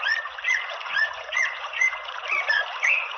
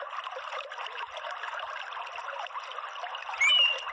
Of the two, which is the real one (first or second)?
second